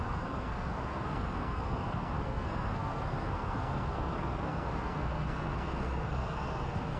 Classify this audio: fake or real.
fake